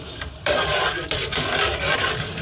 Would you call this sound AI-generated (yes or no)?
yes